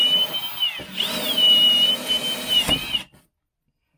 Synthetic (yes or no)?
no